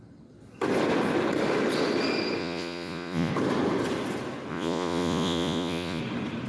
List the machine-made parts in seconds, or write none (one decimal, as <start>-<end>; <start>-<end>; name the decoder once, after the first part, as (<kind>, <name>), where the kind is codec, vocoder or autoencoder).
2.4-3.3 (vocoder, Vocos); 4.5-6.0